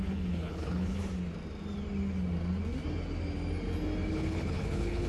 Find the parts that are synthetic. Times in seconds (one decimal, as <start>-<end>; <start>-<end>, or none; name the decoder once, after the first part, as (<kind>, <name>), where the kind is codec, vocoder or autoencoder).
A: 0.0-1.0 (codec, HILCodec); 4.1-5.1